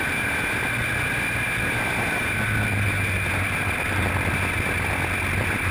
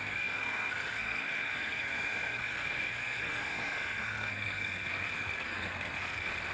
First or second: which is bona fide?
first